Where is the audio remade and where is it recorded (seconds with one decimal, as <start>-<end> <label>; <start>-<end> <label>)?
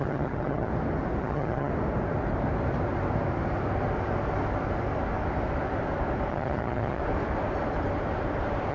0.0-0.7 remade; 0.7-1.2 recorded; 1.2-1.7 remade; 1.7-6.3 recorded; 6.3-7.0 remade; 7.0-8.7 recorded